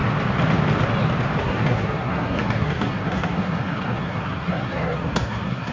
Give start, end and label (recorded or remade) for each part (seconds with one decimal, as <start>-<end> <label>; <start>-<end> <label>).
0.0-1.4 recorded; 1.4-5.7 remade